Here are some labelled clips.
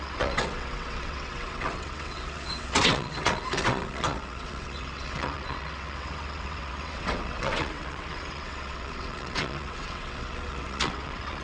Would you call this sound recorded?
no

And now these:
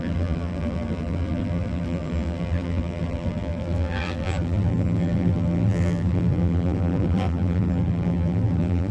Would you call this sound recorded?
no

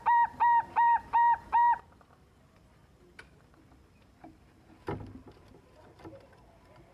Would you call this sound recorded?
yes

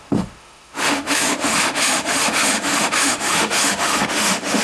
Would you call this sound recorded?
no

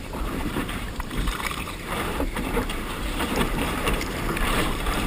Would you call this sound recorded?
no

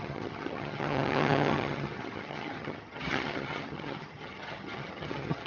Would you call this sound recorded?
no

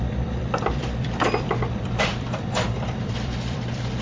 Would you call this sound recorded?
no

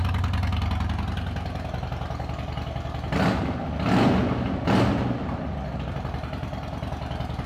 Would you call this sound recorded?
yes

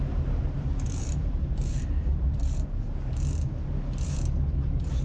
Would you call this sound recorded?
no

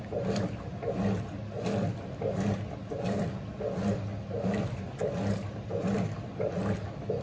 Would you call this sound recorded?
yes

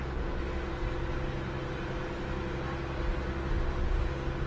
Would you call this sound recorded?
yes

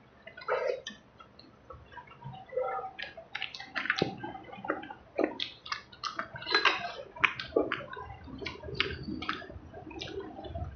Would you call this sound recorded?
yes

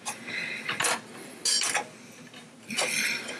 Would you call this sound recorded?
yes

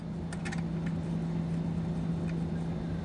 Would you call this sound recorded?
yes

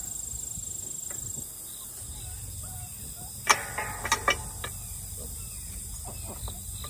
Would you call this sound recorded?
yes